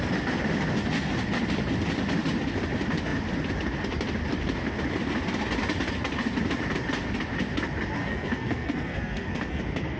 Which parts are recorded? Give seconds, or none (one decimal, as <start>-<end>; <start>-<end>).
0.0-8.0; 9.6-10.0